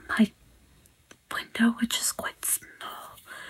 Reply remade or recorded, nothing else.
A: remade